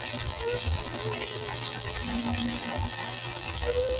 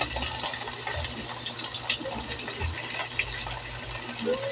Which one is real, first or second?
second